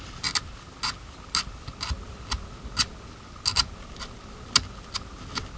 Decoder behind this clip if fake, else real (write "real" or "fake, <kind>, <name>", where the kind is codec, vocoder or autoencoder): real